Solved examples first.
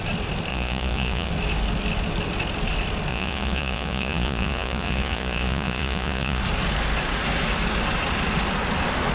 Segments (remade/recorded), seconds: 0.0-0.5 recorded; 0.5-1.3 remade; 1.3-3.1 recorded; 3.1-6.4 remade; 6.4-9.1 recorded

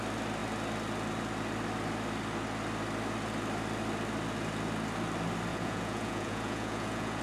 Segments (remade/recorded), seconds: 0.0-5.5 recorded; 5.5-7.2 remade

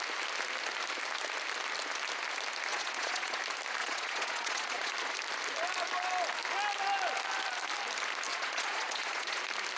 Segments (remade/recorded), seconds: 0.0-2.7 recorded; 2.7-3.4 remade; 3.4-3.8 recorded; 3.8-4.9 remade; 4.9-8.3 recorded; 8.3-9.4 remade; 9.4-9.8 recorded

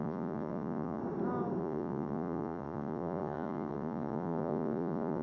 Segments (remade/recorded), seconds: 0.0-1.0 remade; 1.0-1.6 recorded; 1.6-5.2 remade

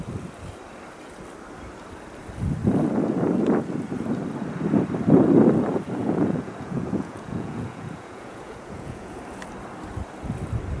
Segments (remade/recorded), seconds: 0.0-6.0 recorded; 6.0-9.1 remade; 9.1-10.8 recorded

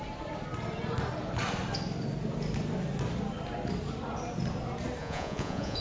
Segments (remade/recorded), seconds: 0.0-5.0 recorded; 5.0-5.8 remade

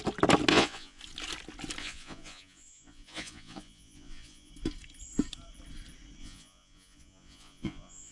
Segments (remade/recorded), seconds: 0.0-0.5 recorded; 0.5-1.0 remade; 1.0-1.8 recorded; 1.8-4.5 remade; 4.5-6.2 recorded; 6.2-8.1 remade